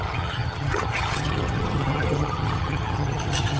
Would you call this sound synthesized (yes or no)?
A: yes